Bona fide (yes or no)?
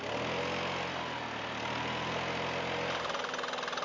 yes